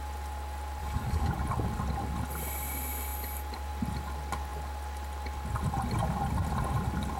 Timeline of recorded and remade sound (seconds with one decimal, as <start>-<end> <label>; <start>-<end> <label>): 0.0-0.8 recorded; 0.8-1.3 remade; 1.3-7.2 recorded